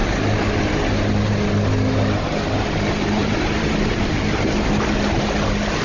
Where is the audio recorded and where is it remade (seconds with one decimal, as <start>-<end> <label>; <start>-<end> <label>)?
0.0-3.2 recorded; 3.2-4.6 remade; 4.6-5.8 recorded